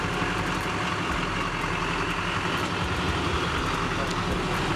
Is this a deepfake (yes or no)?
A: no